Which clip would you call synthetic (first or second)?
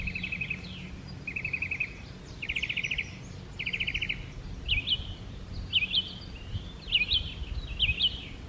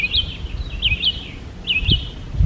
first